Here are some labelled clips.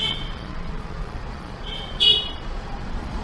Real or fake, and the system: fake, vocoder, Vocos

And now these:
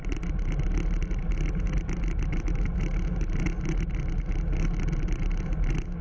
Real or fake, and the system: real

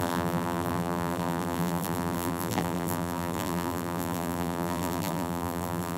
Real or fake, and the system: fake, vocoder, BigVGAN v2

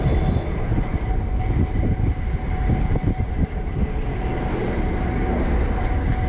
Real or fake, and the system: real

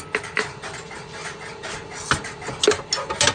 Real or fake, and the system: real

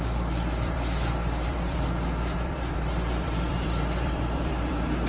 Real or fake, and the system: fake, vocoder, BigVGAN v2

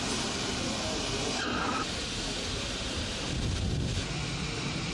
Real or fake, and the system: real